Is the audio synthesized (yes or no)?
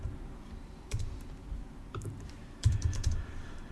yes